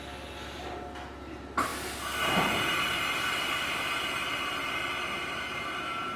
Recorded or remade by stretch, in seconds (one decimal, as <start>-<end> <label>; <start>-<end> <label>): 0.0-6.2 recorded